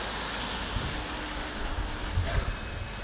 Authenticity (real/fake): real